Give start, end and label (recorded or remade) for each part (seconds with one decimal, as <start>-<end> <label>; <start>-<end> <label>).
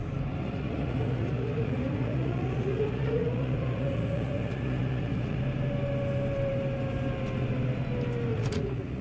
0.0-0.4 recorded; 0.4-5.4 remade; 5.4-8.3 recorded; 8.3-9.0 remade